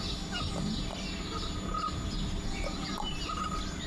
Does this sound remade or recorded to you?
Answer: recorded